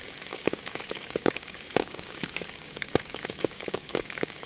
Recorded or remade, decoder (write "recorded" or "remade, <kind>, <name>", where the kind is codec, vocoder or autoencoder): remade, codec, DAC